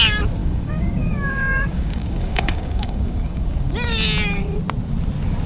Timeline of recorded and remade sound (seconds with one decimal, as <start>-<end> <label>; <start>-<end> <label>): 0.0-0.4 recorded; 0.4-3.7 remade; 3.7-5.5 recorded